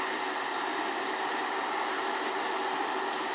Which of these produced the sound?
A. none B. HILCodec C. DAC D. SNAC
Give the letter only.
A